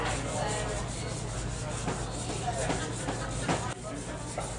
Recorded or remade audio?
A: recorded